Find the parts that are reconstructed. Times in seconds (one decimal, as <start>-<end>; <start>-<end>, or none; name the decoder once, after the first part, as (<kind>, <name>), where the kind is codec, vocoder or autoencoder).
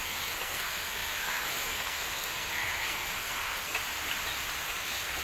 0.0-3.8 (codec, SNAC); 4.6-5.2